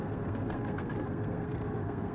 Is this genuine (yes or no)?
no